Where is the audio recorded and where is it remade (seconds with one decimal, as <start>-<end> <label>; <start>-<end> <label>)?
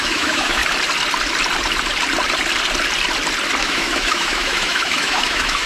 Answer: 0.0-0.6 remade; 0.6-3.6 recorded; 3.6-5.7 remade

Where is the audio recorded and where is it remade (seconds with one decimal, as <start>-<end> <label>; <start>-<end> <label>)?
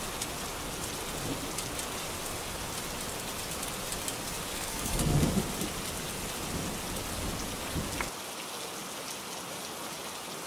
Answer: 0.0-4.5 recorded; 4.5-5.3 remade; 5.3-10.5 recorded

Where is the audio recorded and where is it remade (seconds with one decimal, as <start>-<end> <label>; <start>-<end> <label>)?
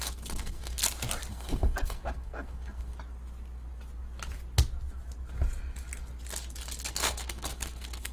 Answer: 0.0-0.8 remade; 0.8-1.3 recorded; 1.3-2.9 remade; 2.9-6.9 recorded; 6.9-8.1 remade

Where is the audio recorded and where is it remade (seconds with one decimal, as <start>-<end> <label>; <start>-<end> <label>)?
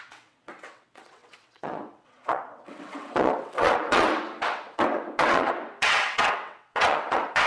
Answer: 0.0-7.5 remade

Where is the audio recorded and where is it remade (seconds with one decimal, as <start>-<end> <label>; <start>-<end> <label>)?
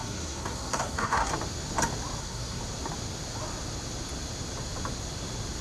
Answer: 0.0-1.3 remade; 1.3-2.2 recorded; 2.2-2.6 remade; 2.6-5.6 recorded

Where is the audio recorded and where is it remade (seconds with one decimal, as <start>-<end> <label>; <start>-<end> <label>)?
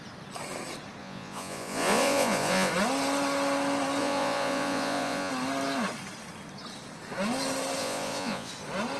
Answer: 0.0-1.0 recorded; 1.0-2.7 remade; 2.7-4.0 recorded; 4.0-5.3 remade; 5.3-7.8 recorded; 7.8-8.5 remade; 8.5-9.0 recorded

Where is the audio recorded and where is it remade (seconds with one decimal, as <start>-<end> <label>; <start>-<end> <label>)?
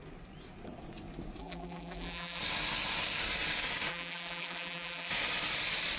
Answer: 0.0-1.4 recorded; 1.4-2.4 remade; 2.4-3.9 recorded; 3.9-5.1 remade; 5.1-6.0 recorded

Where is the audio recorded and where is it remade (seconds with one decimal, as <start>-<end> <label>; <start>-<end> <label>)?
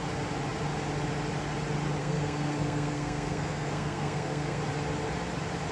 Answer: 0.0-2.0 recorded; 2.0-4.6 remade; 4.6-5.7 recorded